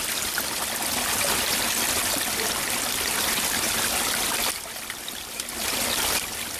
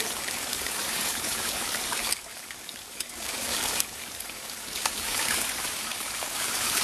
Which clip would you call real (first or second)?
first